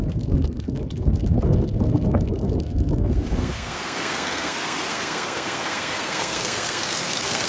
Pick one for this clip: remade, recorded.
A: remade